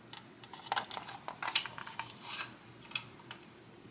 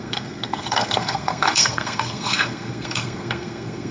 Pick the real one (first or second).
first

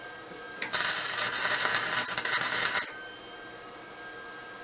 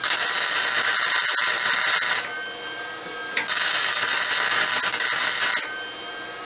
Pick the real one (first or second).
second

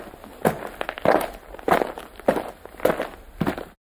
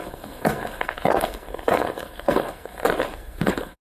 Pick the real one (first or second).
first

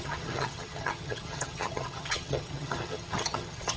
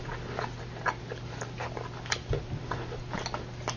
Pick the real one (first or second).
second